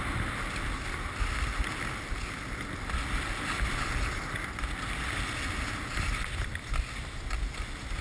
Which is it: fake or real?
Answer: real